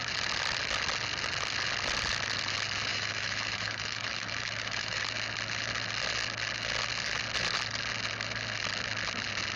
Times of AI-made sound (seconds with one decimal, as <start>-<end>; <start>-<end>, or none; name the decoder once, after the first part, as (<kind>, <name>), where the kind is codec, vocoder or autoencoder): 2.9-5.0 (autoencoder, DAC-VAE)

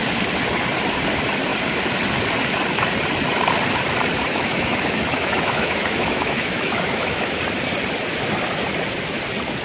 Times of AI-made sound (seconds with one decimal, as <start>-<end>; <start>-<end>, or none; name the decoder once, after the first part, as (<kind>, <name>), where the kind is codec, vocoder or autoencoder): 4.3-7.4 (autoencoder, DAC-VAE)

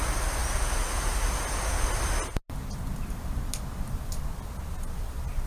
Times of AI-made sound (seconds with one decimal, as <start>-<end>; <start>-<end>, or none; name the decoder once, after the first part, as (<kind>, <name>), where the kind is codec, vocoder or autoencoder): none